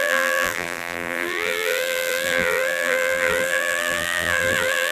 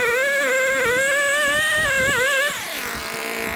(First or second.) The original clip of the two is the second